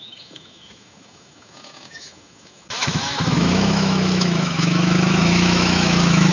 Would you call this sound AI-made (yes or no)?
yes